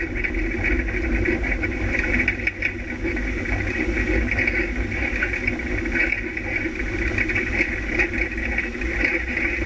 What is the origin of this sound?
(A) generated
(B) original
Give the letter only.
B